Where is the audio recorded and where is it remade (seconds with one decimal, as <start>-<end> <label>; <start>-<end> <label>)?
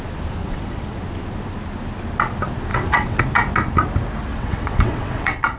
0.0-0.4 recorded; 0.4-1.0 remade; 1.0-2.7 recorded; 2.7-3.2 remade; 3.2-4.3 recorded; 4.3-5.6 remade